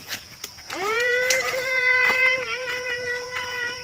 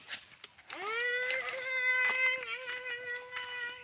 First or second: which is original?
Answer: second